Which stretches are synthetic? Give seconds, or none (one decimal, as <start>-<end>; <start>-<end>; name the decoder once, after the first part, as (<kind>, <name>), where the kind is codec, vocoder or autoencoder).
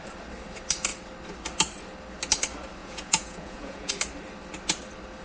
2.8-3.9 (vocoder, Vocos)